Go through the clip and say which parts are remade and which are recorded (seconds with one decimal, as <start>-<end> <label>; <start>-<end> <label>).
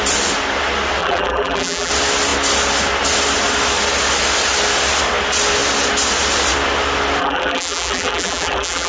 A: 0.0-1.0 recorded; 1.0-1.9 remade; 1.9-7.2 recorded; 7.2-8.9 remade